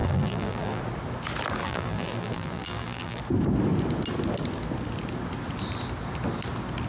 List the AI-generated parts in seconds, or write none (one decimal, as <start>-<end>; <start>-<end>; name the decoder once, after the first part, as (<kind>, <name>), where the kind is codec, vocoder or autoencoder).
0.0-0.8 (vocoder, BigVGAN v2); 1.6-3.2